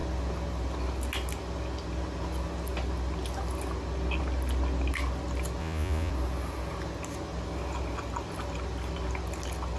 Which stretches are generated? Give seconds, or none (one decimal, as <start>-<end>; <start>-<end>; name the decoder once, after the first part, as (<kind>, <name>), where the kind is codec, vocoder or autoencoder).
5.6-6.1 (vocoder, Vocos)